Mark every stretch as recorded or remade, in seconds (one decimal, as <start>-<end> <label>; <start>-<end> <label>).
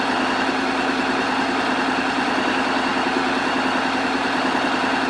0.0-5.1 recorded